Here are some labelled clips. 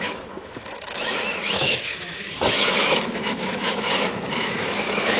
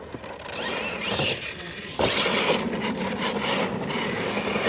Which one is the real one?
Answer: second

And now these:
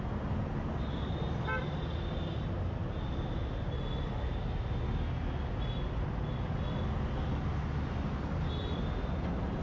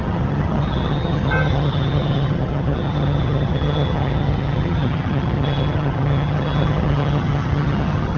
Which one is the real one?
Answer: first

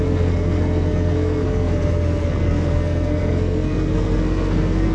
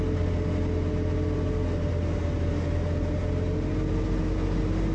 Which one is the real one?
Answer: second